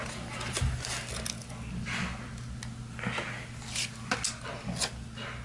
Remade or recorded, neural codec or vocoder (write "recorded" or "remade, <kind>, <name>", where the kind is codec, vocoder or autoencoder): recorded